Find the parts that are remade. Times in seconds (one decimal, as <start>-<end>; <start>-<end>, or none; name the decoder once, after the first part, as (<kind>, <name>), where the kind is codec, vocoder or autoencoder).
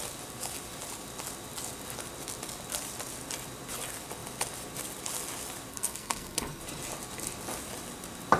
5.7-6.6 (codec, SNAC)